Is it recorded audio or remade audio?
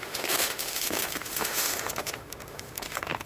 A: remade